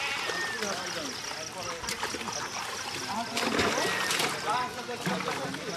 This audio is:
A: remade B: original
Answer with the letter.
B